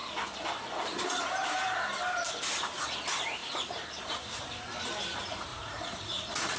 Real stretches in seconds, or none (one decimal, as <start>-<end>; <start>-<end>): 0.0-5.5